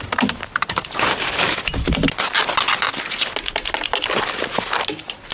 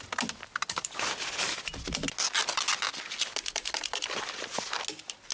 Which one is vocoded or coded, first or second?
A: first